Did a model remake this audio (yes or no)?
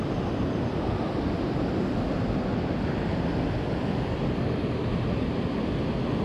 no